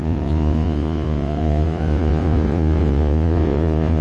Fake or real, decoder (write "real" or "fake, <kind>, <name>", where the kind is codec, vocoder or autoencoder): fake, vocoder, Vocos